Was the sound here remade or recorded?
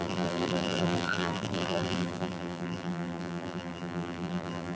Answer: remade